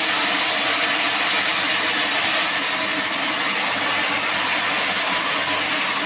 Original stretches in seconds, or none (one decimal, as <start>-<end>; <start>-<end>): 0.0-6.1